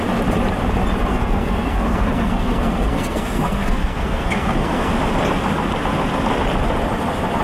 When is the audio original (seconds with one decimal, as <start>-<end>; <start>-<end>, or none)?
0.0-1.1; 4.9-7.4